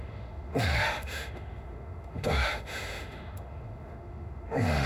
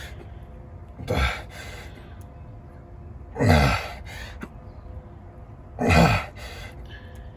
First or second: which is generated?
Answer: first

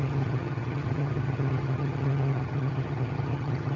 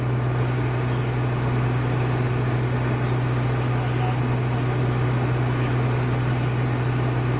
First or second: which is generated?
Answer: first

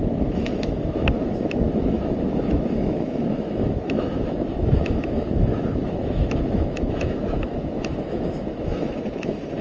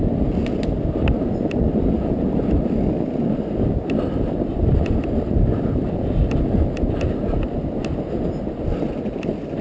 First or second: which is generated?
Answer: first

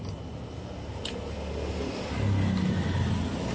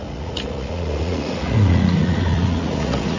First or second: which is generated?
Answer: second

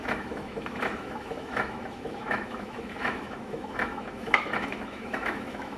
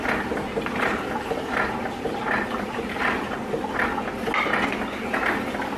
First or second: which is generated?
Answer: first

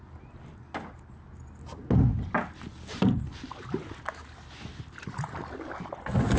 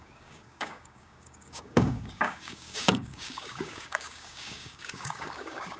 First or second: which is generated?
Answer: second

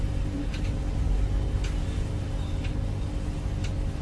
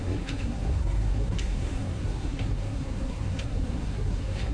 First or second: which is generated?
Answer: second